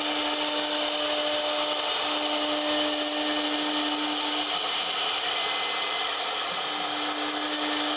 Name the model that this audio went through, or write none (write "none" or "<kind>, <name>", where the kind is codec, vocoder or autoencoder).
none